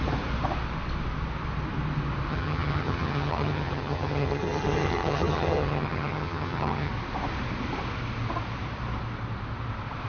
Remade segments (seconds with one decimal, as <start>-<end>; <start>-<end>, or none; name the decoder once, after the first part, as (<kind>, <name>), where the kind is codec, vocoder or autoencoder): 2.3-6.9 (vocoder, HiFi-GAN)

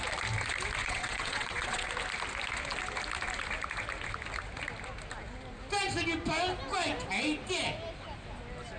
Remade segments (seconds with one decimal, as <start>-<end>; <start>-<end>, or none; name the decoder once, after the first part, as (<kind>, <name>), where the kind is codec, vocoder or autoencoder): 0.8-1.9 (vocoder, WaveNeXt)

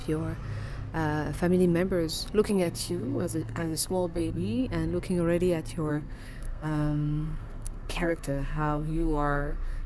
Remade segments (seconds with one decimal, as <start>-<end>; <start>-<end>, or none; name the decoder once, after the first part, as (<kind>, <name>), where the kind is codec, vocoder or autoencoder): 2.5-4.6 (codec, SNAC); 5.9-9.9

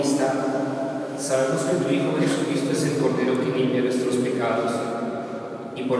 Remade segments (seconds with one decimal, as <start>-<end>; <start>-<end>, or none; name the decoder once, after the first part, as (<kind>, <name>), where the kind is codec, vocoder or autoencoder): 0.4-2.7 (autoencoder, DAC-VAE)

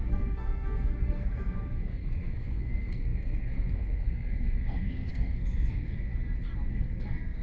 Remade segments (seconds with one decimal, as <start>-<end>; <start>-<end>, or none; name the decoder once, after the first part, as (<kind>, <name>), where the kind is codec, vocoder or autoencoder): 0.0-6.1 (codec, SNAC); 6.7-7.4

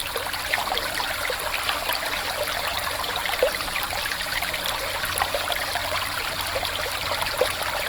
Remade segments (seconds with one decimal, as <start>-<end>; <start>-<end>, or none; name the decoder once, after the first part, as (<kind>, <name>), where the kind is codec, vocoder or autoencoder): 2.7-4.5 (vocoder, BigVGAN v2); 5.8-6.4

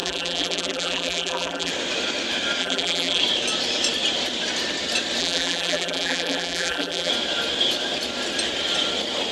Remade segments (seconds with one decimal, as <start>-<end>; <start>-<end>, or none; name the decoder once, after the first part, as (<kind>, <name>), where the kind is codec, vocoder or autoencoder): 0.0-1.7 (vocoder, BigVGAN v2); 2.6-3.2; 5.2-7.1

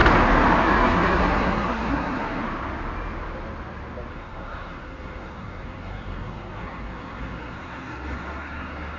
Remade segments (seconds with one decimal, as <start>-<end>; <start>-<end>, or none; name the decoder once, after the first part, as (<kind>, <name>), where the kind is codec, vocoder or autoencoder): 0.6-2.4 (codec, SNAC); 4.1-9.0